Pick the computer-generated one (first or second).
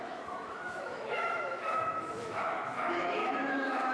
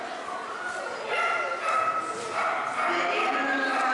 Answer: first